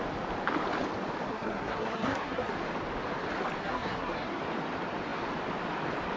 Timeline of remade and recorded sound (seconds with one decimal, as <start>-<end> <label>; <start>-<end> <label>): 0.0-1.3 recorded; 1.3-2.5 remade; 2.5-3.6 recorded; 3.6-4.4 remade; 4.4-6.2 recorded